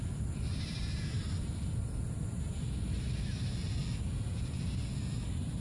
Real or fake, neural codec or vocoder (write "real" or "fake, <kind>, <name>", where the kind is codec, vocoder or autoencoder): real